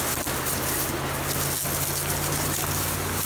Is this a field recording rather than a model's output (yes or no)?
yes